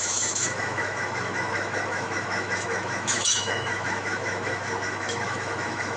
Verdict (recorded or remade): remade